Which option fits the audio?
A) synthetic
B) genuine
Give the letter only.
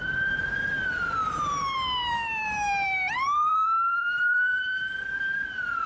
A